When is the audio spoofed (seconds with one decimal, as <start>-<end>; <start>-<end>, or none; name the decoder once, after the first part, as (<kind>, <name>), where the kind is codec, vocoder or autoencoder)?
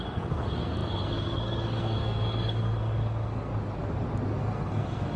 0.0-3.5 (codec, SNAC); 4.4-5.2